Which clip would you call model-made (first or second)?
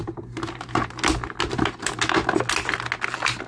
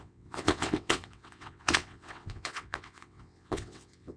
second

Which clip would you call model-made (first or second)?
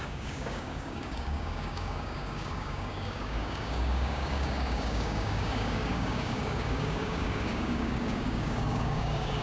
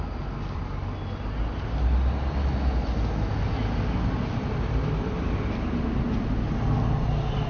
first